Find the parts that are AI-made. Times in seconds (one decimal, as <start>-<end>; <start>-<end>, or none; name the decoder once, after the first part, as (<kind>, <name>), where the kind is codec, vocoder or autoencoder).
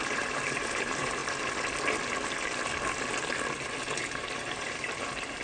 0.0-1.2 (vocoder, BigVGAN v2); 4.4-5.4